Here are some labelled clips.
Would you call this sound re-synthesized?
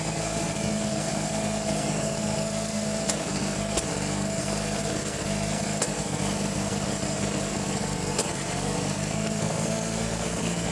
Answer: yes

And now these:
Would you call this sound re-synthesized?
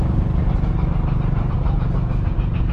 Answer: no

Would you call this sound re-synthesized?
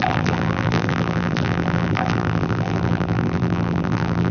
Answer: yes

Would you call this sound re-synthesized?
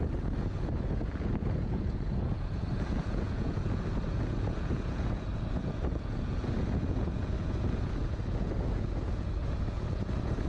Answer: yes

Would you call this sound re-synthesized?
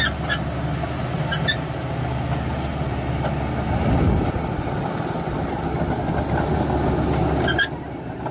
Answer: no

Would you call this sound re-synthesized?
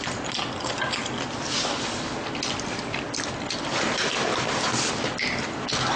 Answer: no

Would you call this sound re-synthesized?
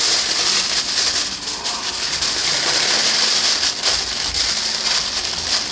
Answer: no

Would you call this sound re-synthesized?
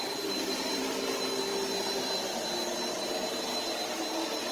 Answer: no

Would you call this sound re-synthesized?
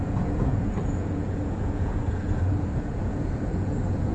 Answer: yes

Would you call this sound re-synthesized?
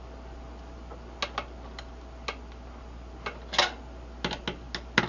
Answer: no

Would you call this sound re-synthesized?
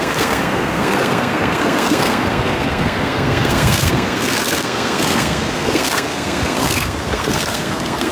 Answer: yes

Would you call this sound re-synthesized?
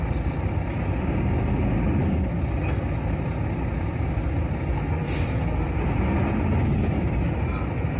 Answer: no